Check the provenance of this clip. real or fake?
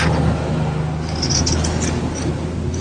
real